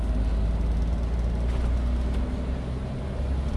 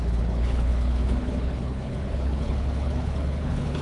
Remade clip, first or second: second